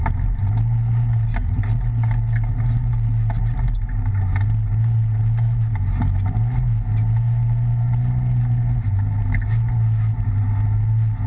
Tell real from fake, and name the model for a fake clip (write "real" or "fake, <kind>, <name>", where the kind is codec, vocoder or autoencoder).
real